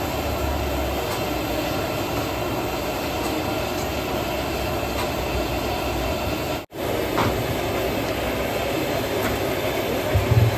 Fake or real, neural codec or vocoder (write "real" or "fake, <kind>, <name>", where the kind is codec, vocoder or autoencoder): real